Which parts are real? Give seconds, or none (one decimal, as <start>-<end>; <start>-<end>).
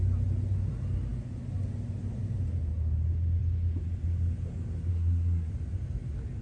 0.0-4.9; 5.5-6.4